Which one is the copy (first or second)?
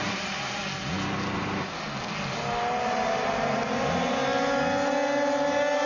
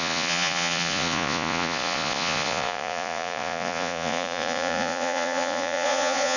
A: second